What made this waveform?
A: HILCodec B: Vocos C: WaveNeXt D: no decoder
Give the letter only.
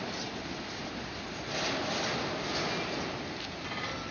D